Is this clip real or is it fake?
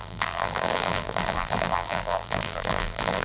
fake